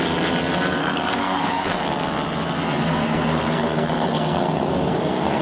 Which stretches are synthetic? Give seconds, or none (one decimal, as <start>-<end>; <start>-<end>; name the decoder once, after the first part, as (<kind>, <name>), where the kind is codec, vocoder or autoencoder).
0.8-1.8 (codec, SNAC); 2.9-5.4